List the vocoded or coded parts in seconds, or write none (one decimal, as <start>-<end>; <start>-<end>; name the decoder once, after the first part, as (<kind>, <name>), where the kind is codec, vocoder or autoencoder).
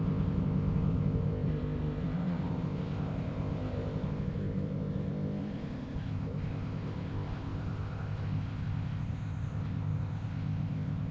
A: 0.0-11.1 (codec, ZipCodec)